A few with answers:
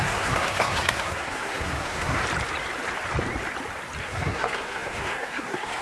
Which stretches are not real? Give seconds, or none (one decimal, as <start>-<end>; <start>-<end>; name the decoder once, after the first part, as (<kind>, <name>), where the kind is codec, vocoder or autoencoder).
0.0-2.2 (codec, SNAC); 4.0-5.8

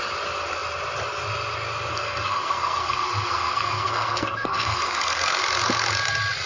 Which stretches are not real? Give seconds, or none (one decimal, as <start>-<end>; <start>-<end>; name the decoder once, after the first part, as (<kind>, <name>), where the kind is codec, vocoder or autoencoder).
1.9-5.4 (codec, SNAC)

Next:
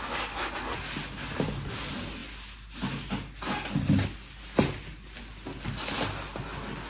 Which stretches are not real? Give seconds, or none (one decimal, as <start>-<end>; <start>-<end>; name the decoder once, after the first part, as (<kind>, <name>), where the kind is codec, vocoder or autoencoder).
none